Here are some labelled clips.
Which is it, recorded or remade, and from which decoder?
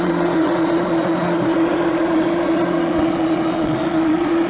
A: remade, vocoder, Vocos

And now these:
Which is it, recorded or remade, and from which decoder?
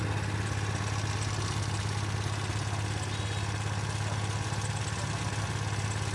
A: recorded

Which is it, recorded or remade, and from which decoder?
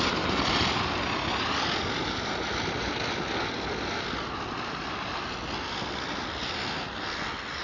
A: recorded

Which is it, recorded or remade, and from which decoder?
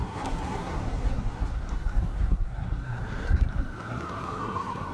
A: remade, codec, SNAC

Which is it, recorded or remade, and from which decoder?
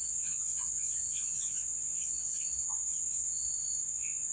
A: remade, vocoder, Vocos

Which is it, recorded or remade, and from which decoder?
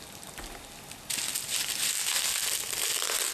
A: recorded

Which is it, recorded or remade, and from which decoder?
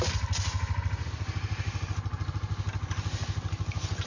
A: recorded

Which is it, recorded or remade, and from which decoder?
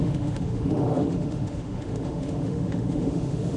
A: remade, autoencoder, DAC-VAE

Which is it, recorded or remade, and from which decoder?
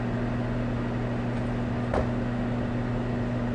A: recorded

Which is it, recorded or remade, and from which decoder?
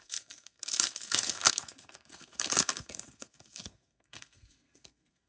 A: remade, codec, SNAC